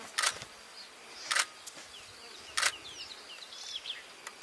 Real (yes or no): yes